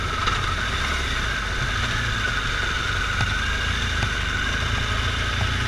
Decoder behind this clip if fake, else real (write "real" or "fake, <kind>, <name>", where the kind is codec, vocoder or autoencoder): real